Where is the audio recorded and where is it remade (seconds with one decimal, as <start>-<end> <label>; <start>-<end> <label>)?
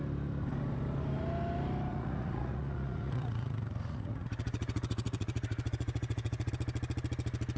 0.0-1.9 recorded; 1.9-6.5 remade; 6.5-7.6 recorded